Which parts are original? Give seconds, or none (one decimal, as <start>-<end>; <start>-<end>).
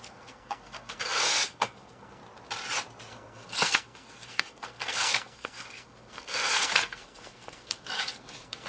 2.2-3.1